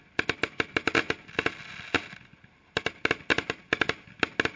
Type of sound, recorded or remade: recorded